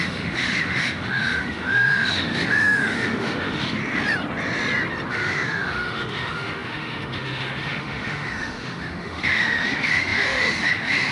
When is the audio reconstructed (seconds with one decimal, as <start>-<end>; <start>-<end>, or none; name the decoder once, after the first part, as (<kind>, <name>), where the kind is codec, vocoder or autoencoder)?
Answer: 0.0-3.8 (autoencoder, DAC-VAE); 5.1-11.1